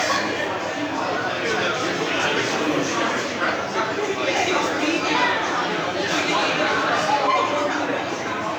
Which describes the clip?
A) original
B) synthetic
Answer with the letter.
B